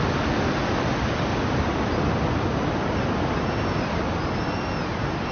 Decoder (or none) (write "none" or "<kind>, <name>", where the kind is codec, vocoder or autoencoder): none